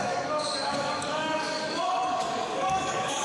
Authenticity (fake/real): fake